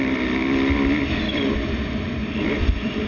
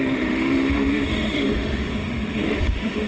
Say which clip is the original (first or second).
first